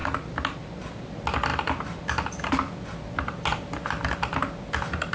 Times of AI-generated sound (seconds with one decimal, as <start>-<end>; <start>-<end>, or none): none